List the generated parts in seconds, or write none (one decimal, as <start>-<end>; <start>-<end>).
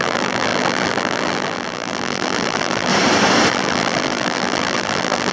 0.0-2.9; 3.5-5.3